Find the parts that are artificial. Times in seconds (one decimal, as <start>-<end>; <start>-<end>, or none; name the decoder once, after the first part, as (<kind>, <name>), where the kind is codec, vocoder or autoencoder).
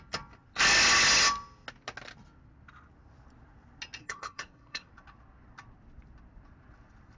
4.0-4.9 (codec, SNAC)